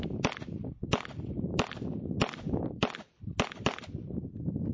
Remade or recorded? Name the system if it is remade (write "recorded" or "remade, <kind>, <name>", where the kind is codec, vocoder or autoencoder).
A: remade, vocoder, BigVGAN v2